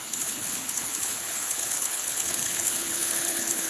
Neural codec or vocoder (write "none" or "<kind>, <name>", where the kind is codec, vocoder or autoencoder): codec, HILCodec